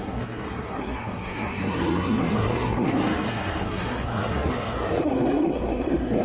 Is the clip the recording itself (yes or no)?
no